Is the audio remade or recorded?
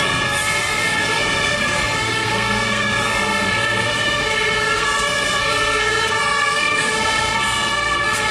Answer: remade